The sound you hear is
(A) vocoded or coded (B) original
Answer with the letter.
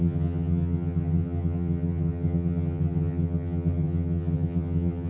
A